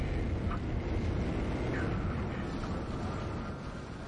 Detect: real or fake real